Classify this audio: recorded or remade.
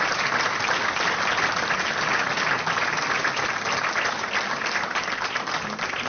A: recorded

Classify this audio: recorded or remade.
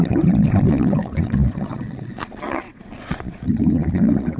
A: remade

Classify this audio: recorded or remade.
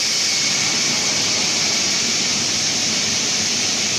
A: recorded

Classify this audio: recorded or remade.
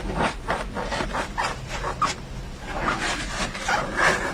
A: recorded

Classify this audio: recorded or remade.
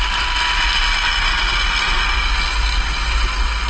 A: recorded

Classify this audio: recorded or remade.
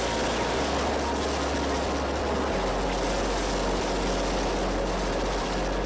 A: recorded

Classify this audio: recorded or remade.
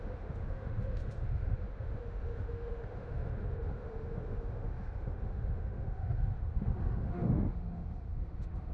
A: remade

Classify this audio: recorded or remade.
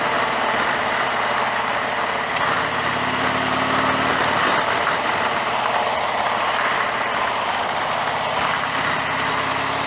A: recorded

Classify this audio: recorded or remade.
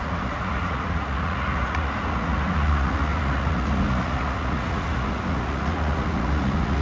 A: remade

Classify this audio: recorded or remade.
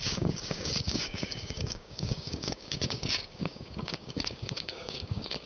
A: remade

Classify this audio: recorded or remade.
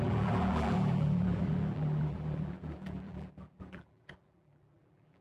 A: remade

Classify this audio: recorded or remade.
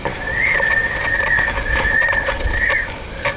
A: recorded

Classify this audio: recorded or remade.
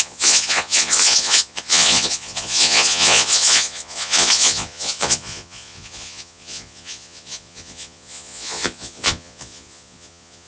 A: remade